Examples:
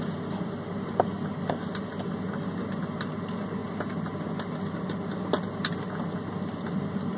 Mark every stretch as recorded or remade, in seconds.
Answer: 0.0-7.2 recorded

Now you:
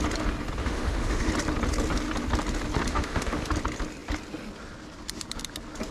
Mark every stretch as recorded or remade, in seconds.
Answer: 0.0-0.6 recorded; 0.6-1.3 remade; 1.3-2.9 recorded; 2.9-3.5 remade; 3.5-5.9 recorded

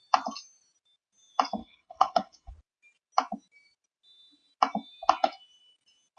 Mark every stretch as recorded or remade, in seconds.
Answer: 0.0-1.6 recorded; 1.6-2.5 remade; 2.5-6.2 recorded

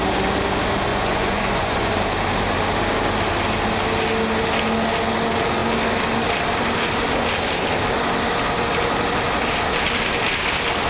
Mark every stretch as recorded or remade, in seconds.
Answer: 0.0-0.9 recorded; 0.9-1.9 remade; 1.9-10.9 recorded